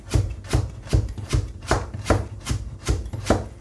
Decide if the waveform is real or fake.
fake